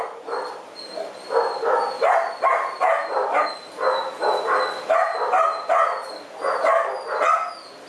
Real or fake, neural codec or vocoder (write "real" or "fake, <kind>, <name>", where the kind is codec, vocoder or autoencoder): real